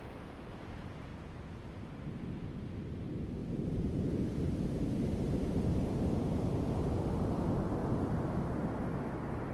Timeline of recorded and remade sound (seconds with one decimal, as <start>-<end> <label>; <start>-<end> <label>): 0.0-1.1 recorded; 1.1-1.7 remade; 1.7-3.4 recorded; 3.4-6.9 remade; 6.9-7.8 recorded; 7.8-8.4 remade; 8.4-9.5 recorded